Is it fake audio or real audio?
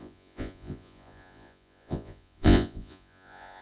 fake